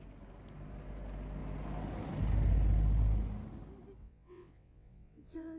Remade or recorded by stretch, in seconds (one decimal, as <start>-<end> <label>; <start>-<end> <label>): 0.0-4.0 recorded; 4.0-5.6 remade